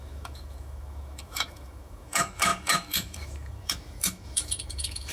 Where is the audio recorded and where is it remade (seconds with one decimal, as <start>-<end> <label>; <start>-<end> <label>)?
0.0-5.1 remade